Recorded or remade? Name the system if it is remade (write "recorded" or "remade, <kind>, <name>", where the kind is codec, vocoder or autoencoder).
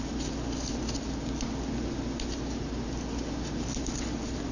recorded